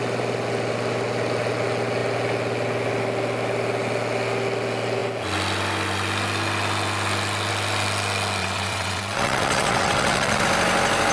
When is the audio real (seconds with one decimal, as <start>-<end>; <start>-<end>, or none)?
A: 0.0-8.4; 10.4-11.1